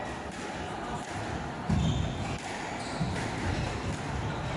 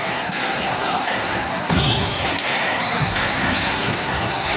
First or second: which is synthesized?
second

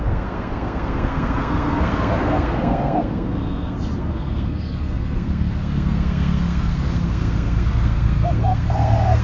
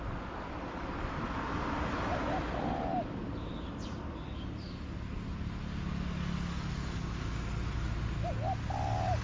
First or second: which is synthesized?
first